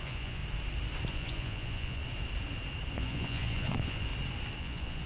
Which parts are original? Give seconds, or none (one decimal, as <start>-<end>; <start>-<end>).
0.4-1.1; 2.0-2.9; 4.1-4.6